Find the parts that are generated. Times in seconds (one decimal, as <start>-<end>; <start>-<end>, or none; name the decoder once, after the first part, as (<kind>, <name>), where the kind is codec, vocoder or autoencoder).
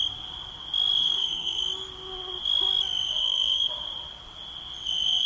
1.0-1.6 (codec, SNAC); 3.2-3.7